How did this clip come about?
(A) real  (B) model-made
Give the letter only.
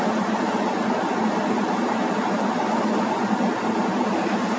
A